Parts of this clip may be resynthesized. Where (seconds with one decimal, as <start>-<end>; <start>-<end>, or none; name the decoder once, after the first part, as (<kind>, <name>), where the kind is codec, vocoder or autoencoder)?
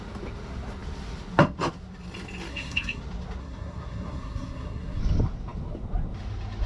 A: 2.5-3.0 (codec, SNAC); 3.4-5.0